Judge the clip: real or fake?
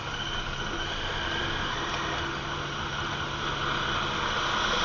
real